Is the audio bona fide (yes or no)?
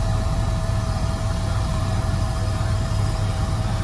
no